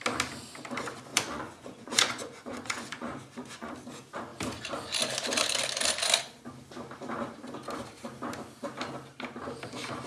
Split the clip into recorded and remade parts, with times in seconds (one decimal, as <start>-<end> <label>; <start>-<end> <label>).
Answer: 0.0-1.1 recorded; 1.1-3.7 remade; 3.7-10.1 recorded